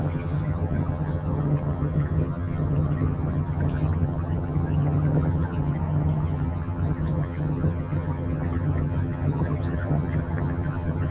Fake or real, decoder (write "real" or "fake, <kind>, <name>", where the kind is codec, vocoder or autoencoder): fake, vocoder, HiFi-GAN